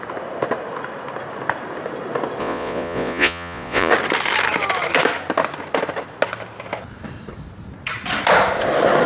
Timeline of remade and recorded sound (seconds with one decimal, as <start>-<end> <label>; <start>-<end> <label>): 0.0-2.4 recorded; 2.4-3.9 remade; 3.9-9.1 recorded